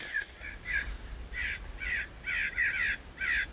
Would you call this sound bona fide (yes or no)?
yes